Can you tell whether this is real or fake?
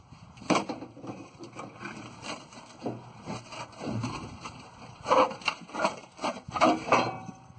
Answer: fake